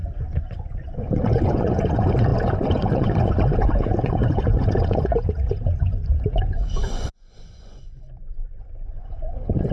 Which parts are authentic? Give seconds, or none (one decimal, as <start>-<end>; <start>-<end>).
none